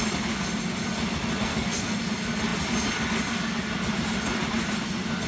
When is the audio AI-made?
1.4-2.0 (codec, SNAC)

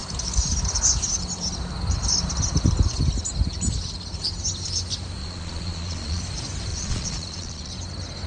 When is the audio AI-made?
5.2-6.2 (vocoder, Vocos); 6.7-7.7

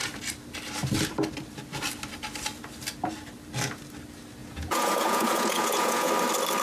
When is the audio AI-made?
4.4-6.1 (vocoder, Vocos)